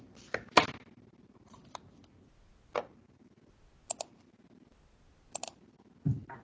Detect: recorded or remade recorded